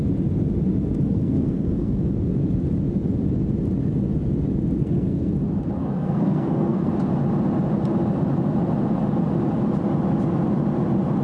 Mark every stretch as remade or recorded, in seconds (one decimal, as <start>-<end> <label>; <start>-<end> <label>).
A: 0.0-1.1 recorded; 1.1-2.1 remade; 2.1-4.8 recorded; 4.8-5.3 remade; 5.3-5.8 recorded; 5.8-6.9 remade; 6.9-11.2 recorded